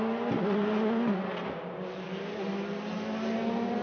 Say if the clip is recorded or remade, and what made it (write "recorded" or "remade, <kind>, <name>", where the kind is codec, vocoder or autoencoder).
recorded